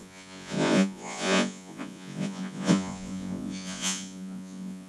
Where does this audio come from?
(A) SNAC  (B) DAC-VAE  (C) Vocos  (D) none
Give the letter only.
C